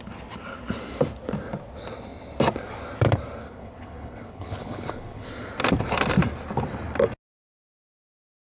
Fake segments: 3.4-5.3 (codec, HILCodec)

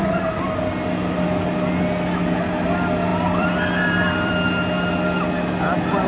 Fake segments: 3.1-4.9 (vocoder, BigVGAN v2)

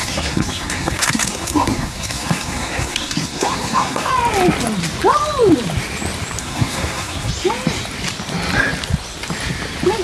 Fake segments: 0.0-4.1 (codec, SNAC); 6.4-7.3

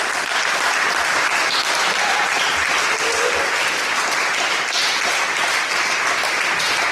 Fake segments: 1.0-1.7 (vocoder, BigVGAN v2); 3.6-6.9

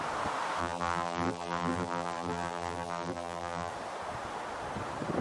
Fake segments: 0.6-3.7 (vocoder, BigVGAN v2)

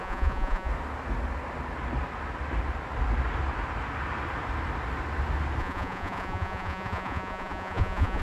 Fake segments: 0.0-0.7 (vocoder, Vocos); 5.6-8.2

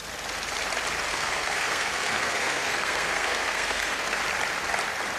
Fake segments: 1.1-4.2 (codec, SNAC)